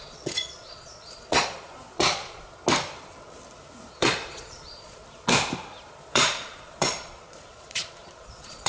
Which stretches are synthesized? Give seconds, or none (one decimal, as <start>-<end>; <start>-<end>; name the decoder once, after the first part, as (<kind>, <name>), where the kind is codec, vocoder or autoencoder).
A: 0.0-2.6 (vocoder, Vocos); 3.9-5.0; 5.9-8.7